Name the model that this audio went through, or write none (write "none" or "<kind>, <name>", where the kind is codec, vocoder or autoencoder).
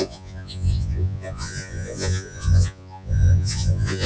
vocoder, Vocos